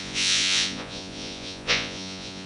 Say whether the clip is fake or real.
fake